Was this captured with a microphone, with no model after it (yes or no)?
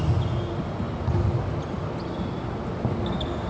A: yes